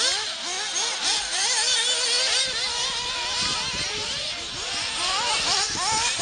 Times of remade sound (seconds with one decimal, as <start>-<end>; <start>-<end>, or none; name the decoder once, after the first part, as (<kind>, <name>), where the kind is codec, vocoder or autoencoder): none